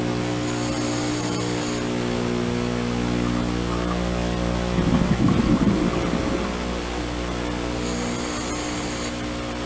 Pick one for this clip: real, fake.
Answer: real